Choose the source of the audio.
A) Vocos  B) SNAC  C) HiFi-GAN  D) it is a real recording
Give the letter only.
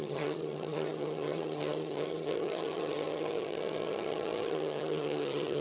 C